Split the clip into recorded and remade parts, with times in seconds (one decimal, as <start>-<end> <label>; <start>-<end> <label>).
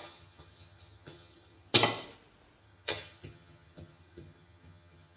0.0-1.7 remade; 1.7-2.6 recorded; 2.6-5.2 remade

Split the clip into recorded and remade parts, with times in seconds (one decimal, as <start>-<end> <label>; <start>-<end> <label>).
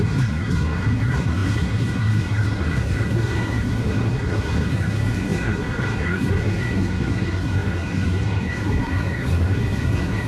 0.0-10.3 remade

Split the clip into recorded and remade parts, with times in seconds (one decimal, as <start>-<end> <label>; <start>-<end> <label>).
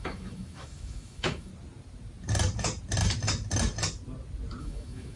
0.0-1.5 remade; 1.5-4.6 recorded; 4.6-5.2 remade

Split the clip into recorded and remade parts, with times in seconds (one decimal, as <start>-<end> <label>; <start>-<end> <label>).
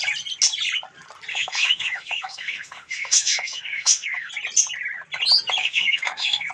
0.0-1.3 recorded; 1.3-4.3 remade; 4.3-5.6 recorded; 5.6-6.5 remade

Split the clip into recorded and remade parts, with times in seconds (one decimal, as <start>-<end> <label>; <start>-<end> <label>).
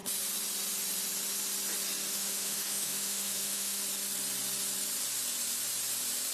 0.0-2.1 recorded; 2.1-3.8 remade; 3.8-6.3 recorded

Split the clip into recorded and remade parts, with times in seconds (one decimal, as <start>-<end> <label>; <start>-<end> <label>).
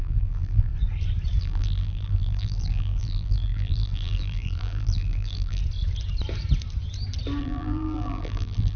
0.0-0.7 remade; 0.7-1.4 recorded; 1.4-5.6 remade; 5.6-7.4 recorded; 7.4-8.8 remade